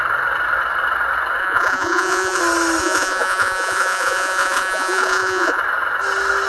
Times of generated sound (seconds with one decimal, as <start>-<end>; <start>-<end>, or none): 1.4-2.4; 2.8-5.6